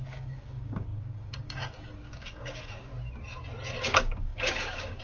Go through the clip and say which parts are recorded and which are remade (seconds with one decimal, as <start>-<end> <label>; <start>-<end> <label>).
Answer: 0.0-2.9 remade; 2.9-3.8 recorded; 3.8-5.0 remade